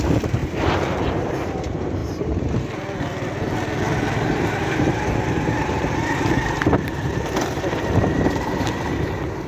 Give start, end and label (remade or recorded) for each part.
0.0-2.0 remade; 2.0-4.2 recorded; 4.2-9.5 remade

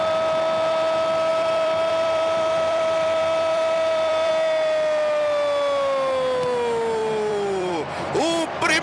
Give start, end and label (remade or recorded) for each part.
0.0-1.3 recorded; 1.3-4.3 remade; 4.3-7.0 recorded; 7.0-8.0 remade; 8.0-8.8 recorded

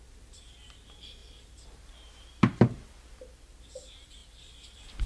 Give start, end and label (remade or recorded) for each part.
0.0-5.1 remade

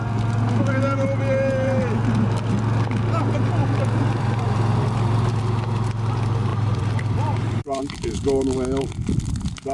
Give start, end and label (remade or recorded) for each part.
0.0-3.6 recorded; 3.6-5.4 remade; 5.4-6.5 recorded; 6.5-7.8 remade; 7.8-9.7 recorded